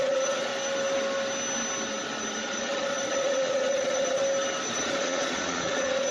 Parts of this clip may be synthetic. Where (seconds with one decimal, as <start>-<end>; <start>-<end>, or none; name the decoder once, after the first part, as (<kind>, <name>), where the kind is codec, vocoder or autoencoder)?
0.0-0.5 (vocoder, Vocos); 2.4-4.2; 4.7-6.1